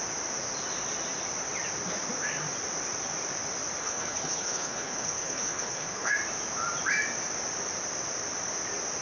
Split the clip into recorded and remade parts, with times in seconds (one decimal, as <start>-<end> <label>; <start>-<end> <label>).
0.0-3.8 recorded; 3.8-6.1 remade; 6.1-9.0 recorded